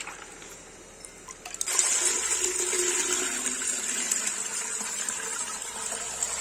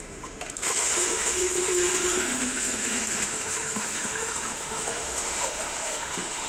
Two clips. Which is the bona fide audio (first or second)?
first